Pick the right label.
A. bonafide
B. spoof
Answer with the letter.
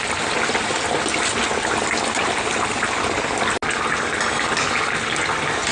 A